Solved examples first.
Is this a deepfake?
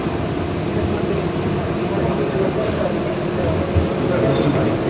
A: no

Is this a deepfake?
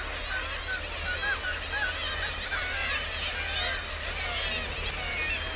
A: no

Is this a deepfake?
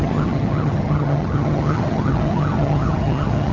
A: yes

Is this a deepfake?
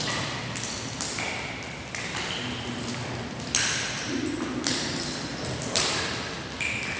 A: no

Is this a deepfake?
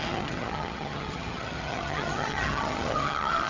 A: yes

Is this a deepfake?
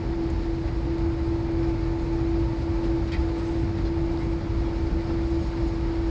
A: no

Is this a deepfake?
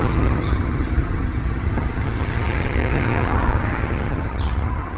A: yes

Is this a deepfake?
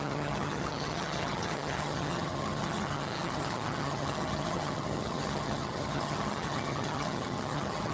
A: yes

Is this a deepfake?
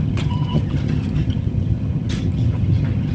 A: yes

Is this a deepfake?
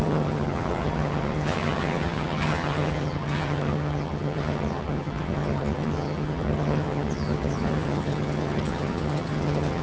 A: yes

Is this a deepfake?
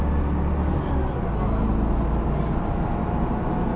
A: no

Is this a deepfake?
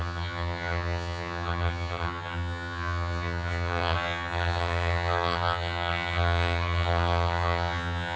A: yes